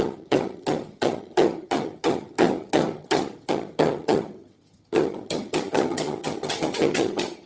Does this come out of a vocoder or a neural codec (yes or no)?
yes